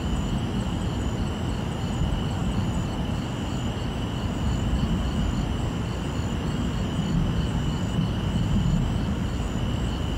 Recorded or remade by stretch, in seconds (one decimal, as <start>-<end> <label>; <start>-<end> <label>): 0.0-10.2 recorded